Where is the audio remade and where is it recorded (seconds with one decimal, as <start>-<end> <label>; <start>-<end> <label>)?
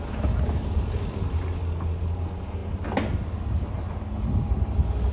0.0-5.1 recorded